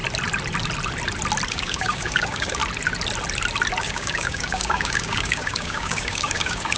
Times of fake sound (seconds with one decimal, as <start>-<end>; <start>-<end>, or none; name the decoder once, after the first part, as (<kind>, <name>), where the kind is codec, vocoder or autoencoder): 1.5-2.6 (codec, DAC); 3.8-6.8